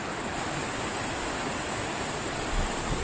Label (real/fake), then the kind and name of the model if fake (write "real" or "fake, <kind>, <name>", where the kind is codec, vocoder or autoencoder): real